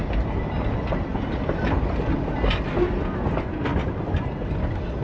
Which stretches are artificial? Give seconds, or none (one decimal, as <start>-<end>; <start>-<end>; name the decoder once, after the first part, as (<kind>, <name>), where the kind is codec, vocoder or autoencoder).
none

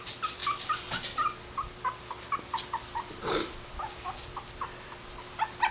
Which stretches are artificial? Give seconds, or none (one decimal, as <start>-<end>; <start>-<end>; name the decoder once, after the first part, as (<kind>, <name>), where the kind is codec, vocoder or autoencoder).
none

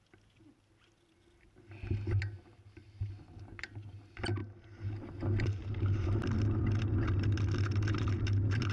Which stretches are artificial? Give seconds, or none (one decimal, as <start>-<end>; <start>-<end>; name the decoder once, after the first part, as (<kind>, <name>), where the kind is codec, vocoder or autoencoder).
none

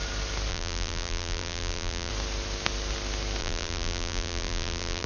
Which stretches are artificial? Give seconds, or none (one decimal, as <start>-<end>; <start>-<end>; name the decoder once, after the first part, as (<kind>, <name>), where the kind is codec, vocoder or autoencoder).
0.5-2.1 (vocoder, BigVGAN v2); 3.4-5.1

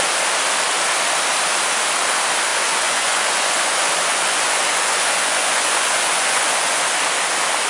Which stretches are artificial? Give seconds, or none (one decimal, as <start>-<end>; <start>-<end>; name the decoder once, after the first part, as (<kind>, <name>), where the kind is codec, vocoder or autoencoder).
2.5-6.8 (vocoder, Vocos)